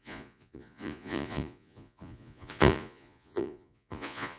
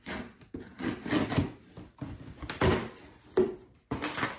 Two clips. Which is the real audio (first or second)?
second